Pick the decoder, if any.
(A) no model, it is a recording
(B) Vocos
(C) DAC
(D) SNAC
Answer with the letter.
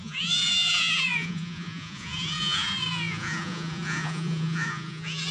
B